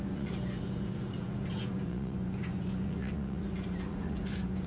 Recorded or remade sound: remade